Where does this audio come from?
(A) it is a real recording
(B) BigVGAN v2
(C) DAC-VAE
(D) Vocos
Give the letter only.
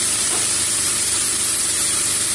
B